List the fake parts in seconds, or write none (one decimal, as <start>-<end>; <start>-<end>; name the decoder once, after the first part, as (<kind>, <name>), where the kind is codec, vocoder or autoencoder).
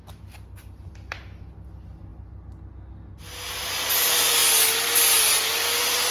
none